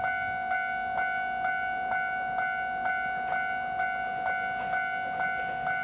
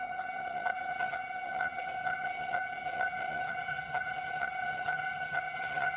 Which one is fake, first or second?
second